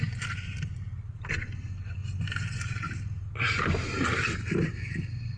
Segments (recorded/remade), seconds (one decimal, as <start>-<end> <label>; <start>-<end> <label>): 0.0-5.4 recorded